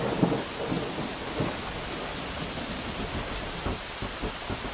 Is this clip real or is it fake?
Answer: real